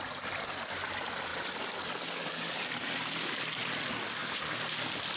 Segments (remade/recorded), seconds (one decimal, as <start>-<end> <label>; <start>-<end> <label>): 0.0-5.2 recorded